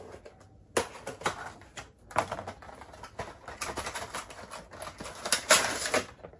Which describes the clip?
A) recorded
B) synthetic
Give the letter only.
A